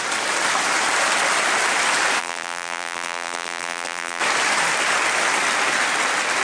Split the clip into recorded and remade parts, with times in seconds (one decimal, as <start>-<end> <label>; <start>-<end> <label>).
0.0-2.2 recorded; 2.2-4.2 remade; 4.2-6.4 recorded